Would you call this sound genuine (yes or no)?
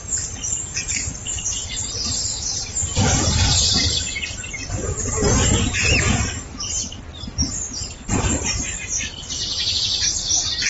yes